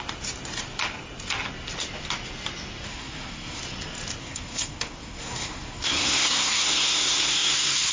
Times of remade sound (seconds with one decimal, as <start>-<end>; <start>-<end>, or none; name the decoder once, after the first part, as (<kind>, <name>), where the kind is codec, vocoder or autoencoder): 2.9-3.6 (codec, SNAC); 4.2-7.9